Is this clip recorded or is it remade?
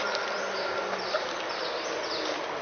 recorded